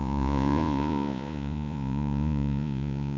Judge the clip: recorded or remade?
remade